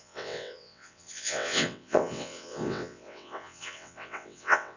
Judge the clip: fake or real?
fake